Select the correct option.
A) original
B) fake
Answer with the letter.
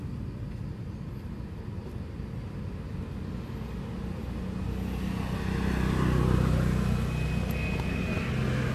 A